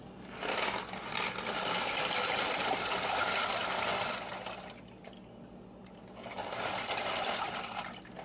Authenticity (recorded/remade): recorded